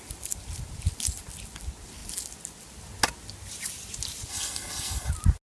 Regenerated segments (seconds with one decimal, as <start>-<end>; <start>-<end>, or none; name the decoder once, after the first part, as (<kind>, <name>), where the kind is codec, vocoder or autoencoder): 4.3-5.1 (codec, SNAC)

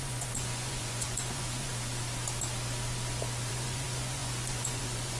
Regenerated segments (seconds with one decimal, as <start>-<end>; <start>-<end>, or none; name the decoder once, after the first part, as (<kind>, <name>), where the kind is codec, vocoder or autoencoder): 0.0-1.7 (vocoder, Vocos); 3.5-5.2

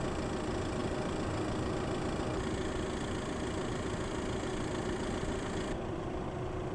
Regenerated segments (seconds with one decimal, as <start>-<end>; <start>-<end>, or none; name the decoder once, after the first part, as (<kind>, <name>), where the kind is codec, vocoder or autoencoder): none

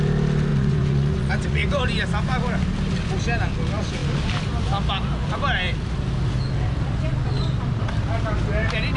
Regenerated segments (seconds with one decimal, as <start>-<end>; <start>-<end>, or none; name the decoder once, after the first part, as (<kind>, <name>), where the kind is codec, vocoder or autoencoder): 0.5-1.8 (vocoder, Vocos)

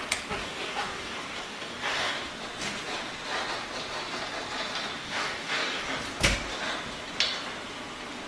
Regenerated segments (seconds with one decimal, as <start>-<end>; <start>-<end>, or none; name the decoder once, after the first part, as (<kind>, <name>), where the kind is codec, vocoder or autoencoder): 0.4-2.3 (codec, DAC); 5.0-5.9